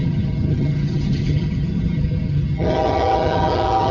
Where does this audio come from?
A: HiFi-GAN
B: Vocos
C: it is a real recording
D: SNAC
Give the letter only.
A